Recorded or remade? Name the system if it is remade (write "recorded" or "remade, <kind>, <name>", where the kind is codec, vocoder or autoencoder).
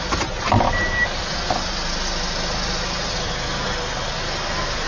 recorded